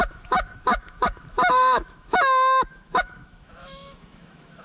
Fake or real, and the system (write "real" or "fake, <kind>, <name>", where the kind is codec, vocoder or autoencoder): fake, autoencoder, DAC-VAE